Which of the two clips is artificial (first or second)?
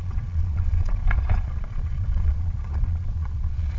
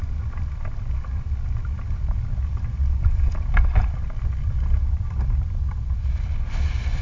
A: first